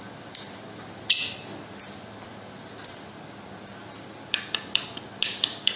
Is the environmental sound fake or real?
real